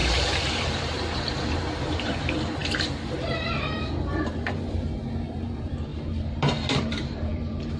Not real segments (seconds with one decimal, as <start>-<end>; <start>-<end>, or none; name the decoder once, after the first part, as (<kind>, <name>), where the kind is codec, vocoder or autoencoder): 0.0-7.8 (vocoder, BigVGAN v2)